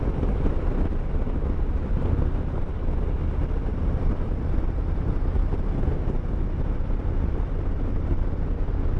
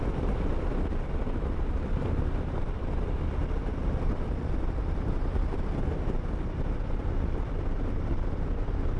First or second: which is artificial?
second